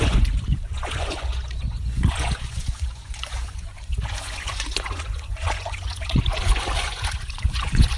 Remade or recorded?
remade